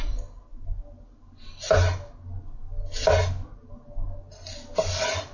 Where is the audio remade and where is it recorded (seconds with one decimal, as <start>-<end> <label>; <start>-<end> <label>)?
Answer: 0.0-5.3 recorded

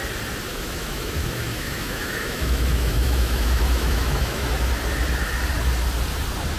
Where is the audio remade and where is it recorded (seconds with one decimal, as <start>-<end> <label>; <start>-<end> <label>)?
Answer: 0.0-0.5 recorded; 0.5-4.5 remade; 4.5-6.6 recorded